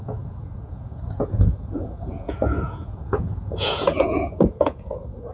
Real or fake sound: fake